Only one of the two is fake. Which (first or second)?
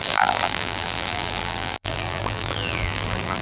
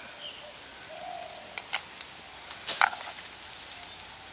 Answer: first